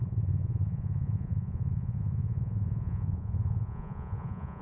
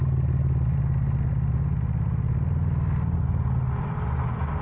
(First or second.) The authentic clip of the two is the second